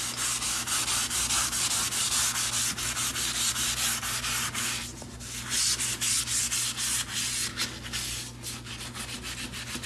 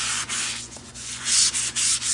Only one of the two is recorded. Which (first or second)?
first